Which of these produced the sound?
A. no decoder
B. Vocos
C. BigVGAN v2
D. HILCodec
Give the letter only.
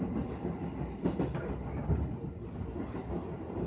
A